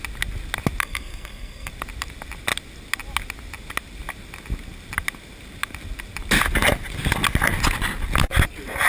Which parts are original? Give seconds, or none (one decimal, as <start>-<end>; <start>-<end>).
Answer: 0.0-0.8; 1.7-8.9